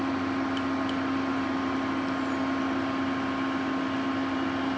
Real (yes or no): yes